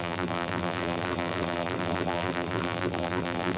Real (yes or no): no